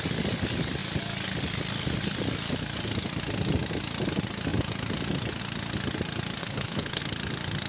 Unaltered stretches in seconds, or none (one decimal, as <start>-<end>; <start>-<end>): 0.0-6.4; 7.0-7.7